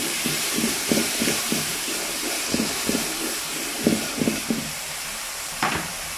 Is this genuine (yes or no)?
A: no